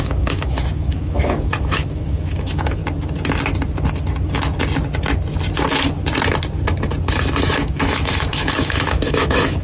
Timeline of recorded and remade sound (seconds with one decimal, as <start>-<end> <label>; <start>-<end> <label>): 0.0-2.8 remade; 2.8-7.6 recorded; 7.6-9.6 remade